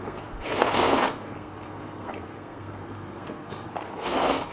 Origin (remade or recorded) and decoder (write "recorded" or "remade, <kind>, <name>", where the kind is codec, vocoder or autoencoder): remade, codec, SNAC